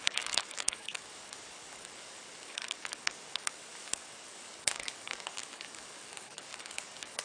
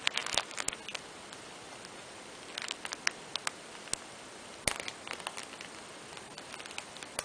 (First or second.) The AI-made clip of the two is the first